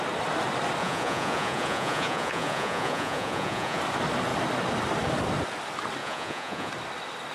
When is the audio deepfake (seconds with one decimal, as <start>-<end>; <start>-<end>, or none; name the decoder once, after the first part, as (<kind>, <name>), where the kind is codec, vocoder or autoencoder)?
0.8-3.8 (vocoder, Vocos); 6.0-6.7